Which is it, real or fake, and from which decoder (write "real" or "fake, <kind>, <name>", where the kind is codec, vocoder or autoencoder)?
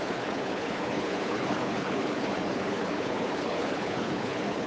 fake, codec, HILCodec